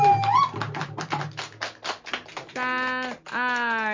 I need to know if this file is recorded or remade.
recorded